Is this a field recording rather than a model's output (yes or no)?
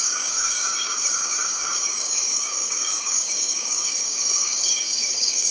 no